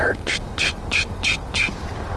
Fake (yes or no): no